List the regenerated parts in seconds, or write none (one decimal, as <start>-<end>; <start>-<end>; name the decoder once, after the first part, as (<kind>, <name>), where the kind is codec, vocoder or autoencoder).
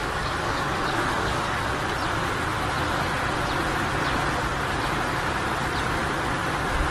0.0-1.7 (codec, DAC)